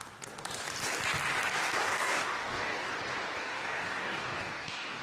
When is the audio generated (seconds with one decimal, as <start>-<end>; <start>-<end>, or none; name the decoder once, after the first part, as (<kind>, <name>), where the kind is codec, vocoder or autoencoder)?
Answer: 1.5-2.9 (codec, DAC); 3.4-5.0

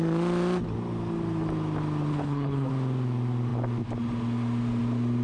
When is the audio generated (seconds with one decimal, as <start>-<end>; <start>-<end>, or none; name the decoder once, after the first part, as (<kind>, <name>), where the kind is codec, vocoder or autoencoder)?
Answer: 2.1-2.7 (codec, HILCodec)

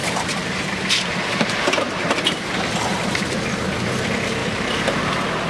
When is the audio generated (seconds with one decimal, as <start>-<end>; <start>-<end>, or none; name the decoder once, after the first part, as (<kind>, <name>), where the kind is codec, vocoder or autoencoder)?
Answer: 0.0-3.2 (vocoder, BigVGAN v2); 4.4-5.0

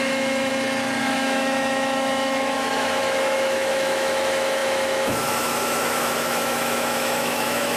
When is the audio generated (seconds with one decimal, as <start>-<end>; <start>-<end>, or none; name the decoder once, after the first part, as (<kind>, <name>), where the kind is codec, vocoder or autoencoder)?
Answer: 0.0-0.5 (autoencoder, DAC-VAE); 1.0-7.8